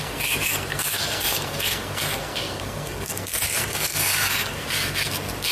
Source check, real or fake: fake